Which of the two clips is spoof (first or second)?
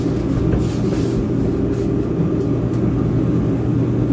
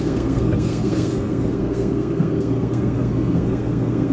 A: second